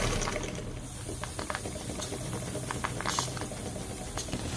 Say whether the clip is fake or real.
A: real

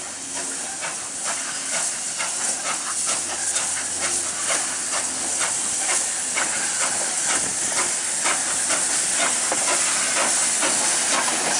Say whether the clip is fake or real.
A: real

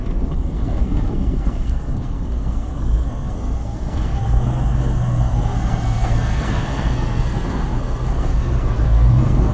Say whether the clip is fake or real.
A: fake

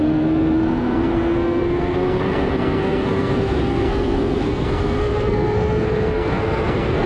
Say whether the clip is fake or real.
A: fake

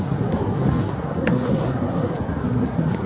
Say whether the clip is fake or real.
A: fake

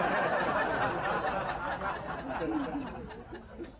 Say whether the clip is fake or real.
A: real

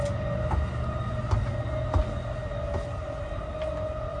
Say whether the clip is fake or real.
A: real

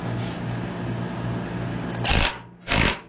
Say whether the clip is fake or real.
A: real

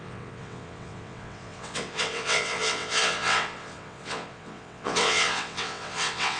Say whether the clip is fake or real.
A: fake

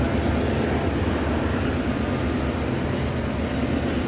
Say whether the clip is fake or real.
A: real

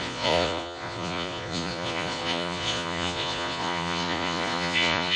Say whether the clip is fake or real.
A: fake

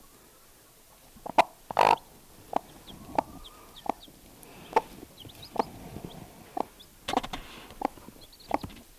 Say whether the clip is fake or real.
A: real